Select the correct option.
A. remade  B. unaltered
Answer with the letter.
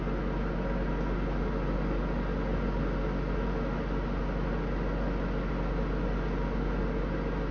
B